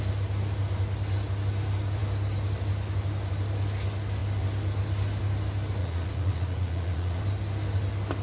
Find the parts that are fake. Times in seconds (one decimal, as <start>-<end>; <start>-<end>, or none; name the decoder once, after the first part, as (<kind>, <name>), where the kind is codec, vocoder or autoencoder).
5.8-7.2 (vocoder, Vocos)